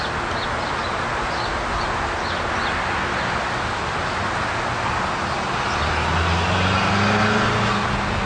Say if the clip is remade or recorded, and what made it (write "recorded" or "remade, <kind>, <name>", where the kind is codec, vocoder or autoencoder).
recorded